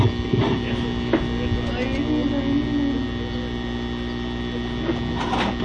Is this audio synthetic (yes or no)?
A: no